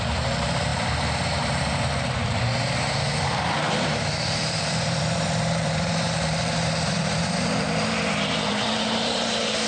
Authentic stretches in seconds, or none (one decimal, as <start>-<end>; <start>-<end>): none